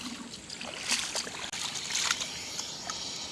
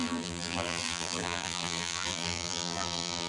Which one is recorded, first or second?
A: first